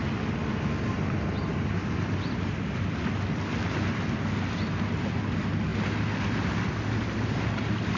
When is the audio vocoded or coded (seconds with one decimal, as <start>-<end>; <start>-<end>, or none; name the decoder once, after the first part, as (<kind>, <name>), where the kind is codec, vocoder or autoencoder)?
none